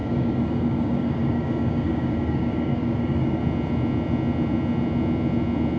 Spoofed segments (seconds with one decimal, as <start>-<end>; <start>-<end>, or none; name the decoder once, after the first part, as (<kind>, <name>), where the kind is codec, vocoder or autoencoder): 0.0-3.4 (codec, DAC)